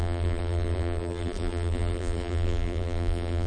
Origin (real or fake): fake